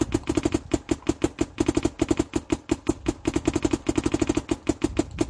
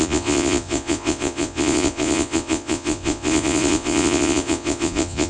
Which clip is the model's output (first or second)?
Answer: second